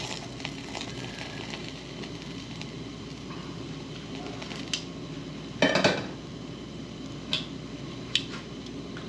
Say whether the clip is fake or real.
real